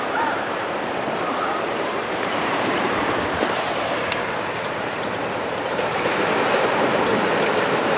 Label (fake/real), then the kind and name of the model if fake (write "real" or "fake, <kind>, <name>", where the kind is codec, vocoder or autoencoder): fake, vocoder, BigVGAN v2